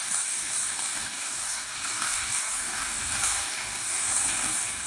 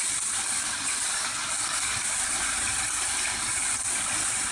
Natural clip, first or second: second